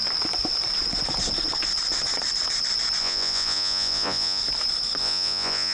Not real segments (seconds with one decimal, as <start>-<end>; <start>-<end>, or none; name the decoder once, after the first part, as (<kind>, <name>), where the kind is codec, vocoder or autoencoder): 3.0-4.4 (vocoder, Vocos); 5.0-5.7

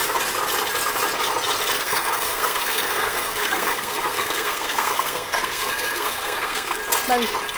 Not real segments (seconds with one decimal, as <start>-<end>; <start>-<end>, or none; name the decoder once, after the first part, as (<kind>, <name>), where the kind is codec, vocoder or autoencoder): 1.8-6.8 (codec, SNAC)

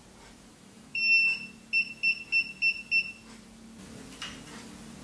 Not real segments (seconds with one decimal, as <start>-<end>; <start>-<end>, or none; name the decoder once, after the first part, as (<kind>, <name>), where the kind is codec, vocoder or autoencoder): 0.5-1.2 (autoencoder, DAC-VAE)

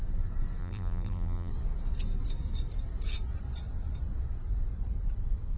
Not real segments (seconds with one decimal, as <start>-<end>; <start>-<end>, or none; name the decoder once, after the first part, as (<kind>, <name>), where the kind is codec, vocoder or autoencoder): 0.6-1.5 (vocoder, BigVGAN v2)

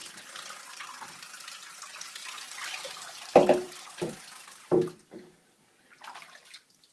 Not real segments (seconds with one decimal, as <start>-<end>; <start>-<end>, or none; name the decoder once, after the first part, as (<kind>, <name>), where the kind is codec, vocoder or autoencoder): 0.0-1.4 (vocoder, BigVGAN v2); 2.5-4.2

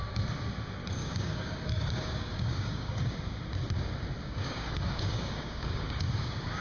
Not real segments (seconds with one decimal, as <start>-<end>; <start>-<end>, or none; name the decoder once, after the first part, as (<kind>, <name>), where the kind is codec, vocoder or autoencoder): 1.0-3.1 (codec, DAC); 4.2-6.6

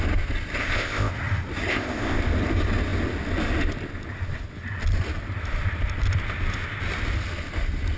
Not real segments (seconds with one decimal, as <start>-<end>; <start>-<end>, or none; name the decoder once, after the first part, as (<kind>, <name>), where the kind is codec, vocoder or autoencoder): 0.6-1.1 (codec, ZipCodec); 1.7-2.2

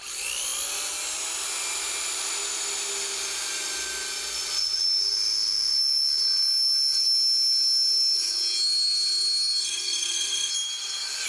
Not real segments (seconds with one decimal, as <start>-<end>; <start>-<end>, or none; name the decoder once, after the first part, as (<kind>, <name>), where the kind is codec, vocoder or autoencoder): 9.6-10.5 (codec, SNAC)